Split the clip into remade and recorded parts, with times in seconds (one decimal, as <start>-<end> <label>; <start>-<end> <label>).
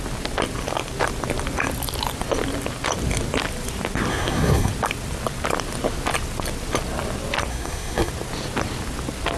0.0-4.1 recorded; 4.1-4.7 remade; 4.7-7.5 recorded; 7.5-8.1 remade; 8.1-9.4 recorded